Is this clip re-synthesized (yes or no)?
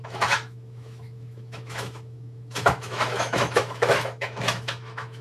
yes